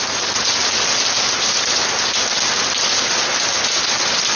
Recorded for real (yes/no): yes